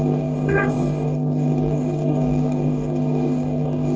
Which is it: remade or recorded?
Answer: remade